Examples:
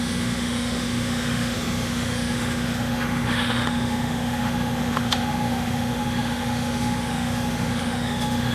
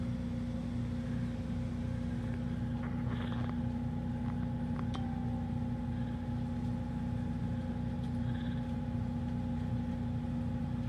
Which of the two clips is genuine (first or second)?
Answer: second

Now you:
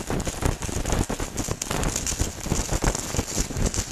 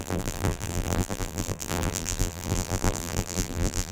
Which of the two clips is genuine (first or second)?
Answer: first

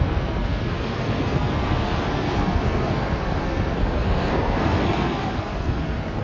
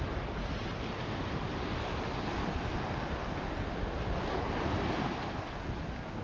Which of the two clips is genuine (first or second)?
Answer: second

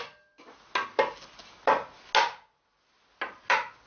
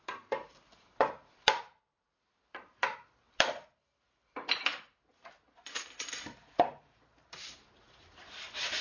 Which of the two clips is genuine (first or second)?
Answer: first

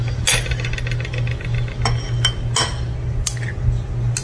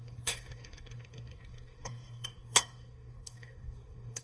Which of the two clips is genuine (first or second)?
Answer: first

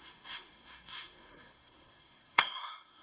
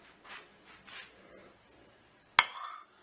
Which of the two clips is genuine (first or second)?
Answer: second